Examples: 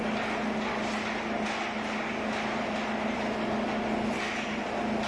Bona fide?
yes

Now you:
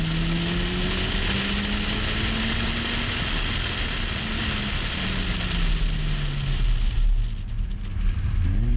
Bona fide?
yes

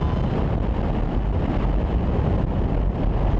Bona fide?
yes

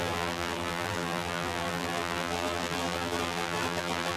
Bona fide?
no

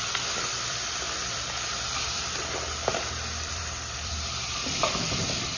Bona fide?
no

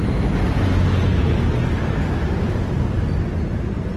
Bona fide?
yes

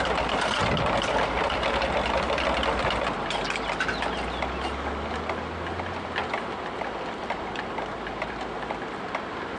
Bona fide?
yes